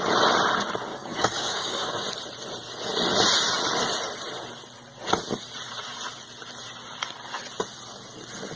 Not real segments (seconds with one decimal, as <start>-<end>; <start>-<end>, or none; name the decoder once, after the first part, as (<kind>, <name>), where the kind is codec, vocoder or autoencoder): 0.9-1.9 (codec, DAC)